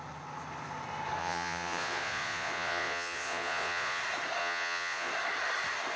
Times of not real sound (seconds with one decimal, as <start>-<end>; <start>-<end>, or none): 1.2-4.0; 4.4-5.1